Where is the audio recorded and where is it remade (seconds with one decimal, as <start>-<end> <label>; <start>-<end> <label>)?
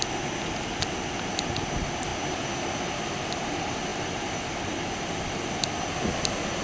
0.0-6.6 recorded